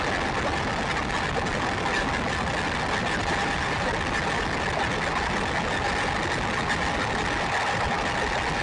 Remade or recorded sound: recorded